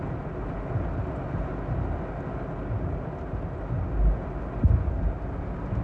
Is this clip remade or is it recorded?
recorded